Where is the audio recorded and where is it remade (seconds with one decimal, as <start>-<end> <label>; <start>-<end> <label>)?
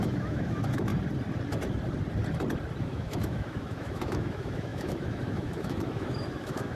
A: 0.0-0.9 remade; 0.9-2.8 recorded; 2.8-6.8 remade